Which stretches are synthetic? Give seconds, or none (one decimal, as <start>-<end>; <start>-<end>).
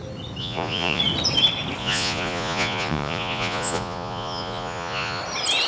0.4-1.0; 1.8-5.2